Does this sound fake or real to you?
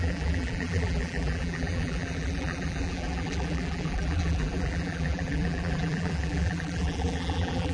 fake